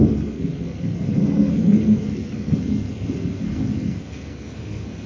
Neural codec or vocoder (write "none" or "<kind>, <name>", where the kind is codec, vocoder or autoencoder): codec, SNAC